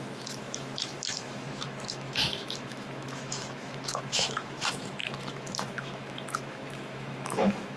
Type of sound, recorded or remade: remade